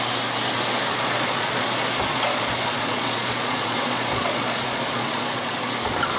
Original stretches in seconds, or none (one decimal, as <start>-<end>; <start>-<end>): 0.0-0.9; 1.6-2.1; 5.6-6.2